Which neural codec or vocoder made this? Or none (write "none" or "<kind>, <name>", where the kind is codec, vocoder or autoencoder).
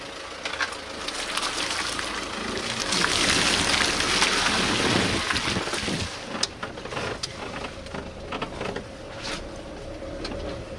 none